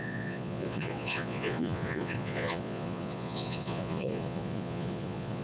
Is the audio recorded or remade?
remade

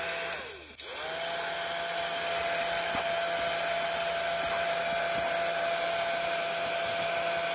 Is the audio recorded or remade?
recorded